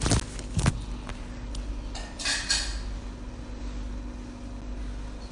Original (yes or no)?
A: yes